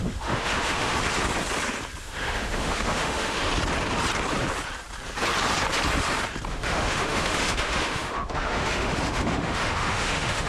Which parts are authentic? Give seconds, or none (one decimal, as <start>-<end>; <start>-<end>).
1.0-2.0; 3.5-6.5